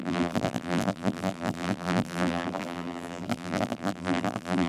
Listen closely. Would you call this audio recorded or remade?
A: remade